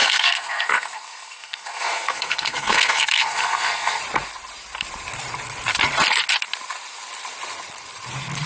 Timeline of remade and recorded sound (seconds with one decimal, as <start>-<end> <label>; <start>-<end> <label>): 0.0-4.0 remade; 4.0-8.5 recorded